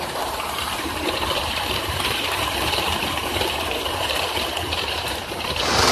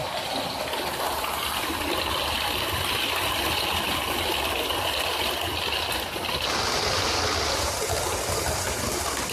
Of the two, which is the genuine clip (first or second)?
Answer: second